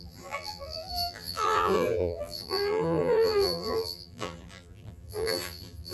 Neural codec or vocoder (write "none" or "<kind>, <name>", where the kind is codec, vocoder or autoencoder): vocoder, BigVGAN v2